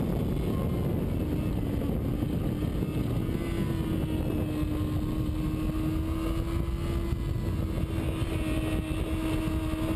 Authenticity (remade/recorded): recorded